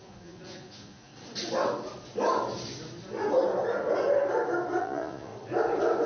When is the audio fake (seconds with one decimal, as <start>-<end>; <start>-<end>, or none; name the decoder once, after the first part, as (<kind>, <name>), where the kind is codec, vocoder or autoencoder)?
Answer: 0.0-1.1 (vocoder, Vocos); 4.8-5.3